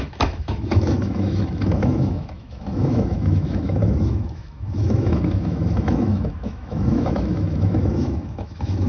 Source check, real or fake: fake